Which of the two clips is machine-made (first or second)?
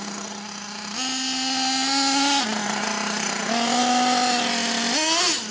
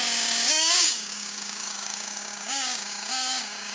second